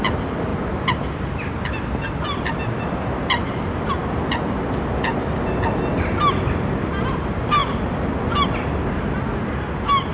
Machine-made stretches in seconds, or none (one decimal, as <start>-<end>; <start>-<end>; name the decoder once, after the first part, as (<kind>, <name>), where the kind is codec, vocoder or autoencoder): none